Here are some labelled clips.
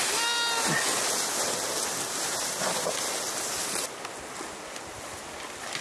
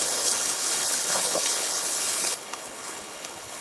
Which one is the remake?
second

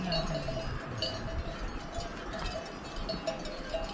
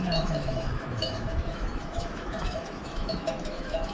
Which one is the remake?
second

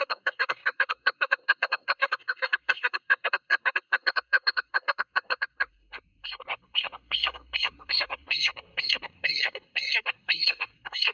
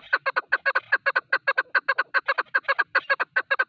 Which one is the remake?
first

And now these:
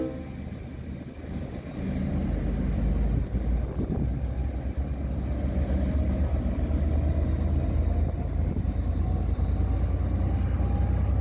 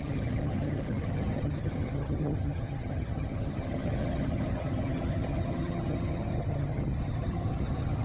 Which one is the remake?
second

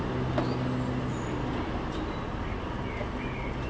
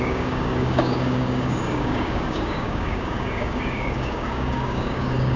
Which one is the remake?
second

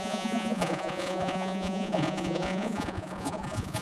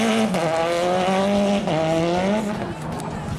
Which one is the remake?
first